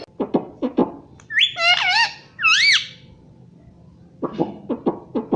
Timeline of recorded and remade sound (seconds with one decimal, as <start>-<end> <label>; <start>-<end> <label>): 0.0-5.4 recorded